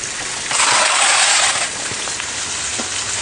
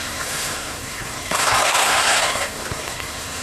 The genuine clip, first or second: first